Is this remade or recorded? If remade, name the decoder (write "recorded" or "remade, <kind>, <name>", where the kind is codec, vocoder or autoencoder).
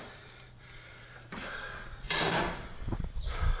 remade, vocoder, BigVGAN v2